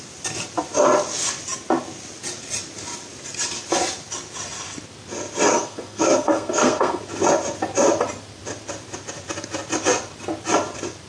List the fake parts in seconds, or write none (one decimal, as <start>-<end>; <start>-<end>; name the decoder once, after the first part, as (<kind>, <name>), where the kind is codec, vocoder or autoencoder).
5.5-7.0 (codec, SNAC)